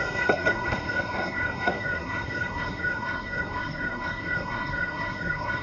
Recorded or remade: remade